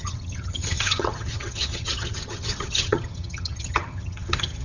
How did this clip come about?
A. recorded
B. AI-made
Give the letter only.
B